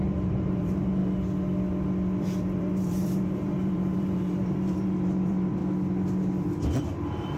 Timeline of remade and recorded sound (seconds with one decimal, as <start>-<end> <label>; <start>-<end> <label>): 0.0-1.0 remade; 1.0-2.2 recorded; 2.2-5.6 remade; 5.6-6.8 recorded; 6.8-7.4 remade